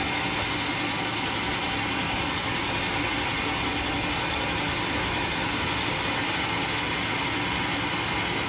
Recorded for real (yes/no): yes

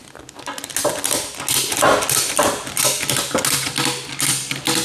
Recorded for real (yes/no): yes